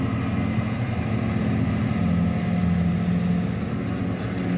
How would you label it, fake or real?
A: real